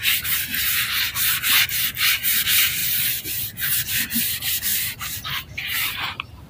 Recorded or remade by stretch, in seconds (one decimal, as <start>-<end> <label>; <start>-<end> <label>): 0.0-2.8 recorded; 2.8-4.2 remade; 4.2-4.7 recorded; 4.7-6.5 remade